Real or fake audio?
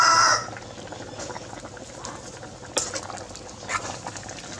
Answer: real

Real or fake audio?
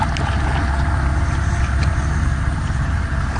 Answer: real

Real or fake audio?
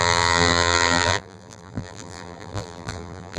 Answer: fake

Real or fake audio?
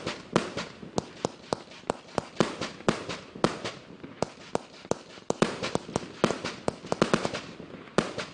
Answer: real